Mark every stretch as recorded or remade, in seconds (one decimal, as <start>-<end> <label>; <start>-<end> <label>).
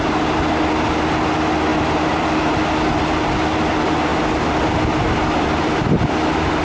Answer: 0.0-1.7 recorded; 1.7-2.3 remade; 2.3-4.1 recorded; 4.1-6.6 remade